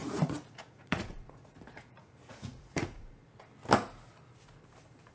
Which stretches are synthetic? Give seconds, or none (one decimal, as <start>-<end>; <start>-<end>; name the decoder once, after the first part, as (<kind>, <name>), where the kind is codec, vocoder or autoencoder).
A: 0.0-3.1 (vocoder, Vocos)